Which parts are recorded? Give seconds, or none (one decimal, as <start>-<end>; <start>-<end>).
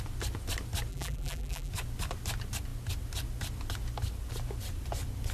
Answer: 0.0-0.9; 1.7-5.3